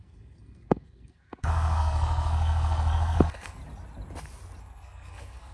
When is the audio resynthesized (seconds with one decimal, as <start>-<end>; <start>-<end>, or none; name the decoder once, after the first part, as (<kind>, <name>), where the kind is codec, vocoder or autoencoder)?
0.0-3.6 (codec, SNAC); 4.6-5.5